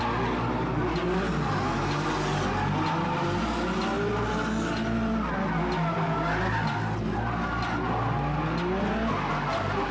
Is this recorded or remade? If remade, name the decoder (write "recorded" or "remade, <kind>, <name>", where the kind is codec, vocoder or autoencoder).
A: recorded